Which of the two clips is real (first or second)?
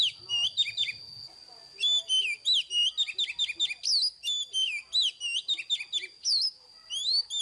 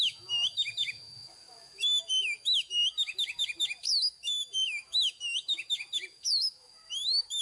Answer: first